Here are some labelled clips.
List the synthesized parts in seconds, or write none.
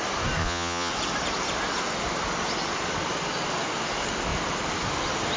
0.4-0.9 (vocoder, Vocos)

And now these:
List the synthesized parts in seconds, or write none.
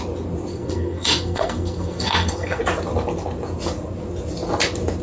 0.5-2.6 (codec, SNAC)